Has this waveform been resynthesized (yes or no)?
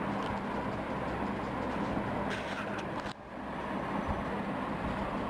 no